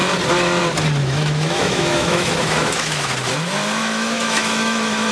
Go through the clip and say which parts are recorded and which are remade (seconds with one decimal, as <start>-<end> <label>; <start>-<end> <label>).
0.0-1.0 recorded; 1.0-3.1 remade; 3.1-3.8 recorded; 3.8-5.1 remade